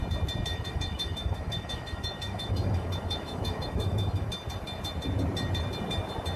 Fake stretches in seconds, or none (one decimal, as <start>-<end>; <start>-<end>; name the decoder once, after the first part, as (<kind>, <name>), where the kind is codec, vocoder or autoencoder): 0.5-4.3 (autoencoder, DAC-VAE)